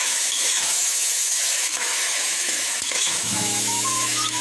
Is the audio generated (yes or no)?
yes